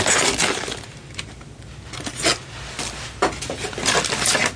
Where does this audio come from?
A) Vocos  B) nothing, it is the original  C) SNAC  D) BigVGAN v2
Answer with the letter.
B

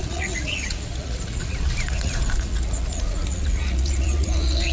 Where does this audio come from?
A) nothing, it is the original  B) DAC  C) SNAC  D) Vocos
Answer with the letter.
D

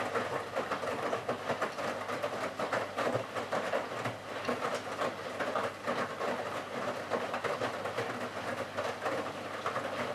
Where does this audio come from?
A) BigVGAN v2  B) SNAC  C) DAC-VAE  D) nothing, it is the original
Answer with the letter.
D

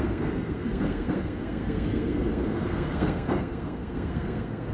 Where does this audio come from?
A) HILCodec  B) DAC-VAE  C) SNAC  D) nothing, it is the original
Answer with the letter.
C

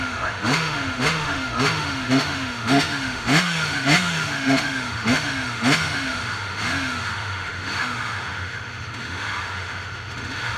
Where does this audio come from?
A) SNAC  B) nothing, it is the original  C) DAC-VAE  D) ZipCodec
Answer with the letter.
C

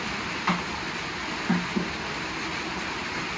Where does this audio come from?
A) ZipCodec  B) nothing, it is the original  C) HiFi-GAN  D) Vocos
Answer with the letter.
B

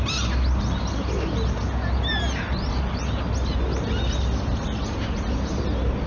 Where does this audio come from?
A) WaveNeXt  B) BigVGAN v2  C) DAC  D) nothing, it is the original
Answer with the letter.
D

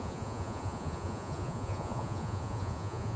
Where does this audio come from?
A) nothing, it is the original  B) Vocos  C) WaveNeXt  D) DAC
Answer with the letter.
B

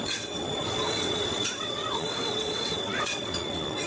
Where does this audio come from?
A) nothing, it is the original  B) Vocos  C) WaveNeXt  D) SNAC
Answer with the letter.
C